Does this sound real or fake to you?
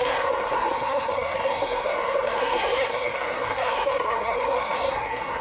fake